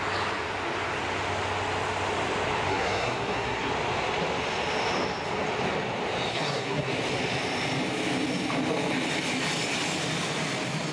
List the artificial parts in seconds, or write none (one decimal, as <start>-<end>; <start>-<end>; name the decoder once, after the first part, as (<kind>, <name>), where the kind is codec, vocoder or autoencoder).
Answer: 2.7-3.7 (codec, SNAC); 6.3-6.9